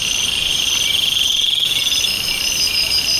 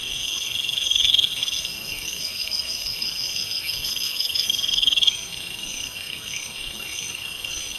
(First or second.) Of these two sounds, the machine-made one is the second